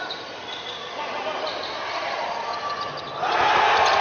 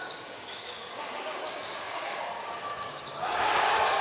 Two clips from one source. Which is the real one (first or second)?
first